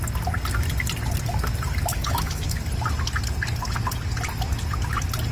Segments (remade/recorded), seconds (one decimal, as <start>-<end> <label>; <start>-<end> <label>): 0.0-1.9 recorded; 1.9-2.6 remade; 2.6-5.3 recorded